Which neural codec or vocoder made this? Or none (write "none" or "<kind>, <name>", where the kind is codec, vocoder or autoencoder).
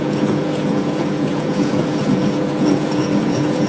vocoder, Vocos